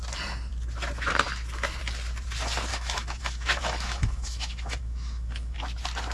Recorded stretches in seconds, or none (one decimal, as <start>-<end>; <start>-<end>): 0.0-2.7; 5.6-6.1